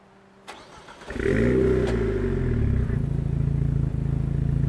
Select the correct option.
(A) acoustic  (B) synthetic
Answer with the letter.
A